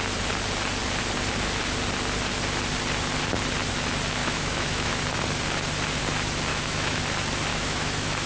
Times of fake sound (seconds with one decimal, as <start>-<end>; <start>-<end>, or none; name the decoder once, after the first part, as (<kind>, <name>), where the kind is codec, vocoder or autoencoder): 4.2-5.0 (autoencoder, DAC-VAE); 6.5-7.0; 7.5-8.3

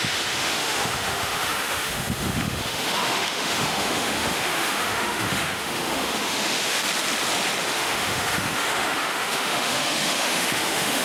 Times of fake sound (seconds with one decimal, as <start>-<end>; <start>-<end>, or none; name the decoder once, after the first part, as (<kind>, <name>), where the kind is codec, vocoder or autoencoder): 0.0-6.8 (autoencoder, DAC-VAE); 7.7-11.0

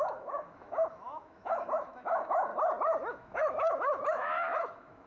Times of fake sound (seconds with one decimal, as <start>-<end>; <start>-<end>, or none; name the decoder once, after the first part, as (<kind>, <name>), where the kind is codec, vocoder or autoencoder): 0.0-2.5 (autoencoder, DAC-VAE); 3.1-5.1